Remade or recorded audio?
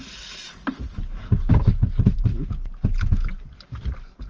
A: recorded